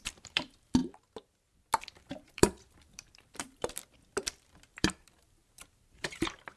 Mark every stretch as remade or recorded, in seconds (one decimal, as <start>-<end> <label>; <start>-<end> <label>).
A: 0.0-0.8 remade; 0.8-1.9 recorded; 1.9-3.8 remade; 3.8-4.7 recorded; 4.7-6.6 remade